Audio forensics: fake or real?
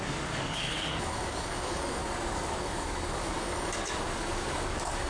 fake